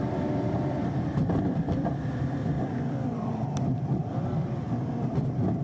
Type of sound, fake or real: fake